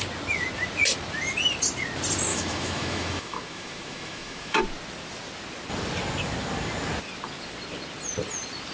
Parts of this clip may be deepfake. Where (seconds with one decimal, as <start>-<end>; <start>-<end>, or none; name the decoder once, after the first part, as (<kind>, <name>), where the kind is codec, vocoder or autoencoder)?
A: 2.3-4.6 (autoencoder, DAC-VAE)